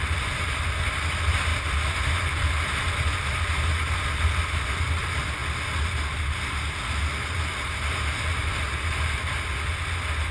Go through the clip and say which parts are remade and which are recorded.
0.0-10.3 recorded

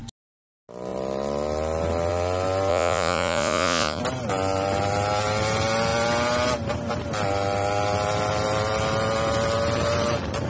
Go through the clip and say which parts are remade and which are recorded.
0.0-2.7 recorded; 2.7-4.0 remade; 4.0-10.5 recorded

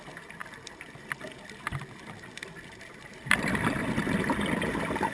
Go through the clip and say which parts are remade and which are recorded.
0.0-5.1 recorded

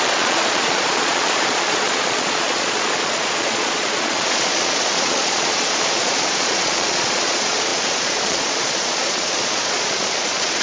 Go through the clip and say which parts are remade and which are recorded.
0.0-10.6 remade

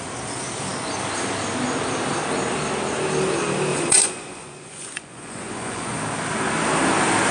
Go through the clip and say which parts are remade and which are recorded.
0.0-3.7 recorded; 3.7-6.0 remade; 6.0-7.3 recorded